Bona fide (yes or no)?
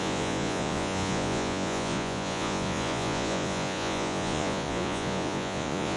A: no